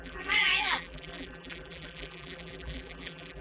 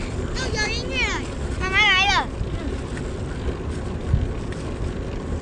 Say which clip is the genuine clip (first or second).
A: second